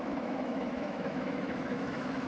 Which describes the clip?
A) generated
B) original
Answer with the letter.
A